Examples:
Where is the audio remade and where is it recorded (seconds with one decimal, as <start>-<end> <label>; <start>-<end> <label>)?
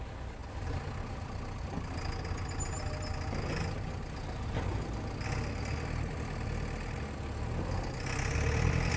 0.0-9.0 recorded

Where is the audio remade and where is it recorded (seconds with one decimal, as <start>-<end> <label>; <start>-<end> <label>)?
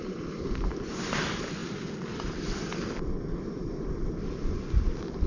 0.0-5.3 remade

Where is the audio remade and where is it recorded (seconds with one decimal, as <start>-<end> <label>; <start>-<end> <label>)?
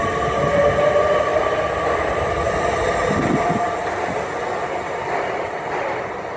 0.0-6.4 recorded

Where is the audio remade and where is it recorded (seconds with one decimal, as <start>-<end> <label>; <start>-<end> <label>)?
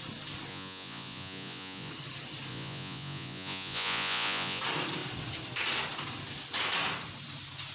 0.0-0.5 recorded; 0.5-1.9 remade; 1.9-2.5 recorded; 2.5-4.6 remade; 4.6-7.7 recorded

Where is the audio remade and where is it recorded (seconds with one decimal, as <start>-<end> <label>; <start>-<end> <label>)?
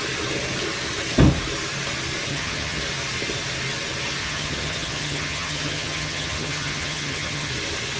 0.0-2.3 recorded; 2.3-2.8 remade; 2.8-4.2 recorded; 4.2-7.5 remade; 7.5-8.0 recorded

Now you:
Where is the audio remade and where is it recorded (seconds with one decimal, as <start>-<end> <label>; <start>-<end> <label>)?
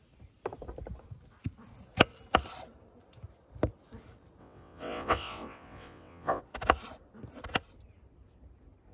0.0-4.4 recorded; 4.4-6.4 remade; 6.4-8.9 recorded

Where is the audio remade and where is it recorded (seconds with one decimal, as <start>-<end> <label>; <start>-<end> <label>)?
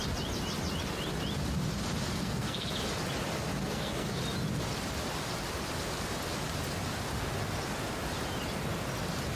0.0-2.2 recorded; 2.2-2.7 remade; 2.7-3.6 recorded; 3.6-4.2 remade; 4.2-9.4 recorded